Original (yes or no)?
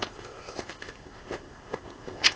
no